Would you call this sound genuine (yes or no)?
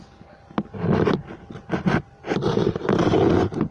yes